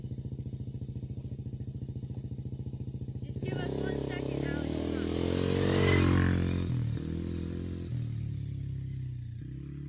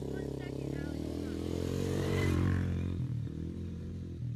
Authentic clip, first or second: first